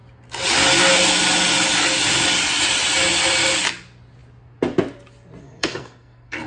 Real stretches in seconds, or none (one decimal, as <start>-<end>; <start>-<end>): 0.0-5.4